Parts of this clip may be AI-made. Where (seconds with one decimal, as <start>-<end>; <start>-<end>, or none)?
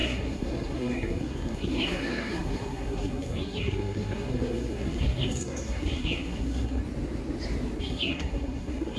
0.0-6.8; 7.8-9.0